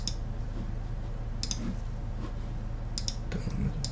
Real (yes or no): yes